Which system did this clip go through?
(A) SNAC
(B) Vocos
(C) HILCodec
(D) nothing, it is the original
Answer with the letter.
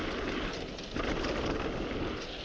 D